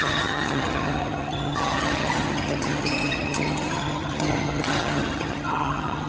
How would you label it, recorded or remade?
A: remade